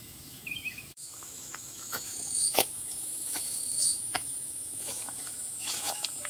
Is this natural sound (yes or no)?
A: no